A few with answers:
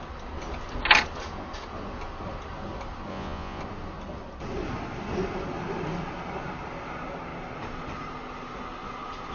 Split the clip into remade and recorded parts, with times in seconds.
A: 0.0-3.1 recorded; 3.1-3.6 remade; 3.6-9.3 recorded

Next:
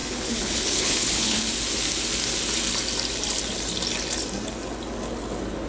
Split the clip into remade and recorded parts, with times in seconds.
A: 0.0-1.5 remade; 1.5-5.7 recorded

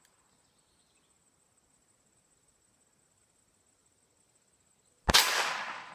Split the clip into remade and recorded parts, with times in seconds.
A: 0.0-5.9 recorded

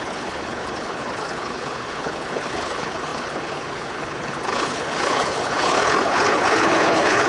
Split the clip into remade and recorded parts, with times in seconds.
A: 0.0-7.3 remade

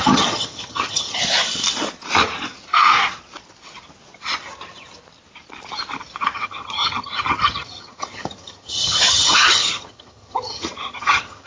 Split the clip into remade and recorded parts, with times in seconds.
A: 0.0-1.2 remade; 1.2-6.2 recorded; 6.2-11.5 remade